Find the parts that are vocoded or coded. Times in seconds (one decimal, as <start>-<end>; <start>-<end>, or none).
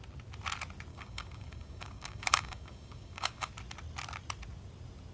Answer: 0.9-3.5